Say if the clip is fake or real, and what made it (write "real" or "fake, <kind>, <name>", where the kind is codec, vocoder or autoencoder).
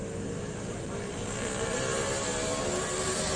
real